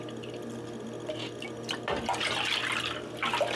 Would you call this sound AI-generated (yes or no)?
no